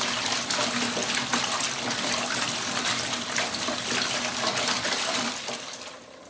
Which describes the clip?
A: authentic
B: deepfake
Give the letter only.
A